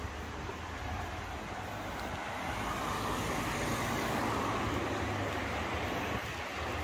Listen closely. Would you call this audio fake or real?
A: real